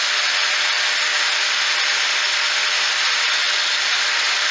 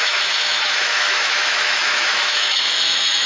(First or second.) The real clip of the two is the first